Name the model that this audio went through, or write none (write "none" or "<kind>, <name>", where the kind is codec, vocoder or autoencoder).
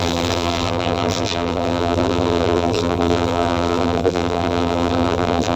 vocoder, BigVGAN v2